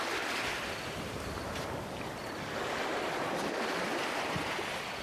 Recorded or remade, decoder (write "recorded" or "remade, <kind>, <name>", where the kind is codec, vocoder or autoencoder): recorded